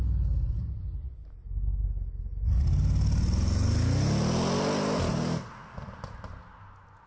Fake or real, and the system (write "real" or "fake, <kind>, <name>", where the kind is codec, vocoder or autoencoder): real